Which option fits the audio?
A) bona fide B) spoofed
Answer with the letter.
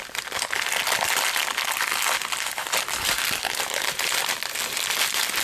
A